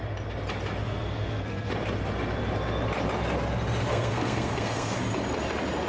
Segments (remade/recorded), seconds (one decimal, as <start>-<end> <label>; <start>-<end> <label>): 0.0-0.8 recorded; 0.8-1.7 remade; 1.7-3.9 recorded; 3.9-5.0 remade; 5.0-5.9 recorded